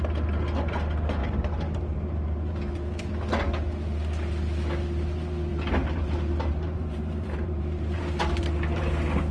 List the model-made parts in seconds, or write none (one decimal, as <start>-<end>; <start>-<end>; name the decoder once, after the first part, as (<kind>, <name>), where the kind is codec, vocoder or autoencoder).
1.2-3.1 (vocoder, BigVGAN v2); 5.5-8.8